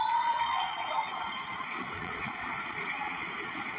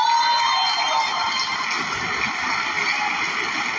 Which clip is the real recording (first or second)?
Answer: second